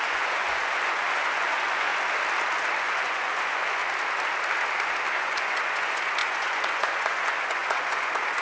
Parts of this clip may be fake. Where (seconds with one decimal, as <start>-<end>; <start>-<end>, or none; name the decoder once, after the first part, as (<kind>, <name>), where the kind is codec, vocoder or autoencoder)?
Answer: 0.0-1.9 (vocoder, Vocos); 2.8-3.8; 5.1-8.4